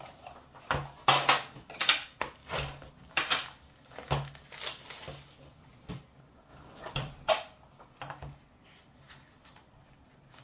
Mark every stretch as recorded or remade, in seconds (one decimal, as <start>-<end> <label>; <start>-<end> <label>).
0.0-6.5 recorded; 6.5-7.3 remade; 7.3-10.4 recorded